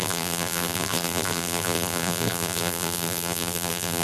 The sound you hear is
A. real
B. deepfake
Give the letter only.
B